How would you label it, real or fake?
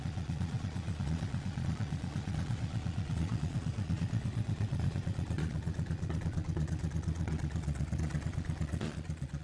fake